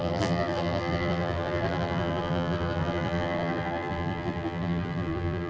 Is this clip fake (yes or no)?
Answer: yes